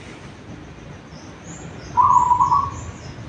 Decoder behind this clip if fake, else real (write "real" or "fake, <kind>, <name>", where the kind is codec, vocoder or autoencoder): real